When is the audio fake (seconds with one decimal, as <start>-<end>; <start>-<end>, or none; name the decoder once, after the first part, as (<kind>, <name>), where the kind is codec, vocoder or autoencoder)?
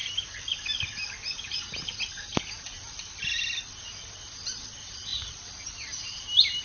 4.0-5.1 (vocoder, BigVGAN v2); 5.7-6.6